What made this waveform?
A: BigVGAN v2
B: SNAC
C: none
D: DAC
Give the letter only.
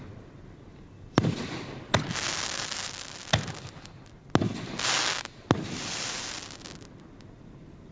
C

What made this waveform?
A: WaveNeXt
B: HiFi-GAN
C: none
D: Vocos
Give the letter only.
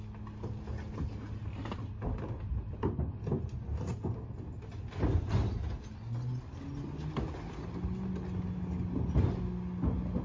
C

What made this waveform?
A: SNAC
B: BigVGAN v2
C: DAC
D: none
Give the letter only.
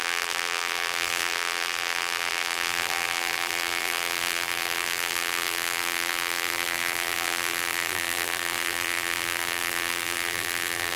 B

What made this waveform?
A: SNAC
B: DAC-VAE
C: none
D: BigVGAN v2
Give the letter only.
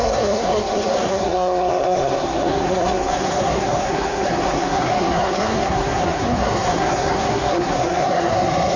A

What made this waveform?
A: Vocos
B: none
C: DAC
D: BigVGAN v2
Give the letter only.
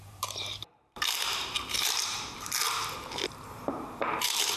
D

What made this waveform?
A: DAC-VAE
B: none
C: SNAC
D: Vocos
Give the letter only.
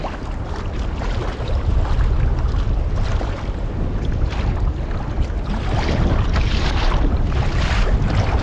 B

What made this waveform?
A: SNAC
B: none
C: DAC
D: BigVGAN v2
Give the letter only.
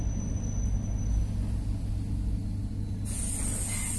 B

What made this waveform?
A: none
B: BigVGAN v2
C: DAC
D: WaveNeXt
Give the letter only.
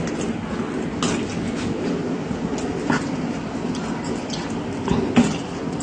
A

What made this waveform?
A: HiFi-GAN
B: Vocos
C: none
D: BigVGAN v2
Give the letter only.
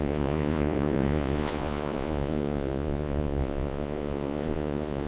B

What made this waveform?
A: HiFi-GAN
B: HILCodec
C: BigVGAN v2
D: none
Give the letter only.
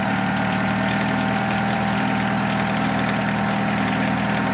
C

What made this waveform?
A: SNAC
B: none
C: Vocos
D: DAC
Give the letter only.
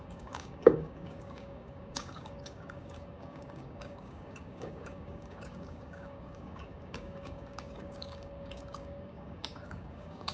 D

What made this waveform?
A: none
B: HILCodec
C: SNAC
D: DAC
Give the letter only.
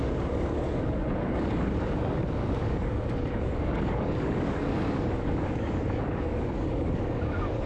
D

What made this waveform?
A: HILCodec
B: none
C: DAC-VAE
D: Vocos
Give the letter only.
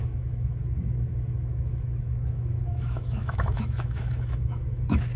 C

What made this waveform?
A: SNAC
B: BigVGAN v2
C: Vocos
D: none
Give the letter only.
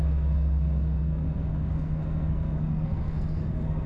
A